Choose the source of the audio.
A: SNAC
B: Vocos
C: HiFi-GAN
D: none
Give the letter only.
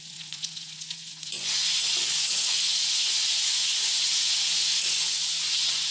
B